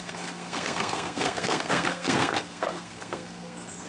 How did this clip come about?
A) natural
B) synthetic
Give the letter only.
B